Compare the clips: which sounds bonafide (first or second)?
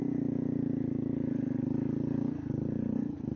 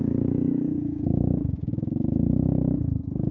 first